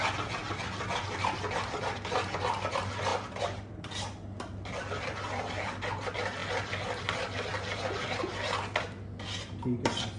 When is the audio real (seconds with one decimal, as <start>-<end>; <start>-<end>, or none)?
0.0-10.2